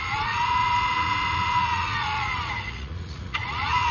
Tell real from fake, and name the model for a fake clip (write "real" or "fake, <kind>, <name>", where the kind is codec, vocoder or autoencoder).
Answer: fake, vocoder, Vocos